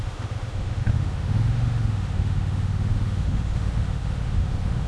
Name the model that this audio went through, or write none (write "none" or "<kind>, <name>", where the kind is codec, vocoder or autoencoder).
autoencoder, DAC-VAE